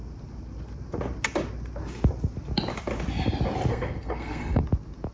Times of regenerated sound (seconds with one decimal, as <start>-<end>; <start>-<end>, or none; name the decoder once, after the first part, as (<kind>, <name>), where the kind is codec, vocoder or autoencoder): 3.7-4.6 (codec, SNAC)